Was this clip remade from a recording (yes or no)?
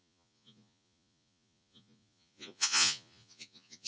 yes